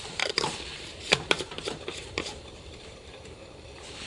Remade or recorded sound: remade